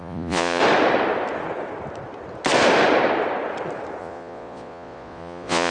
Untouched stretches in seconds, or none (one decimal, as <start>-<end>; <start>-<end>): 0.6-4.0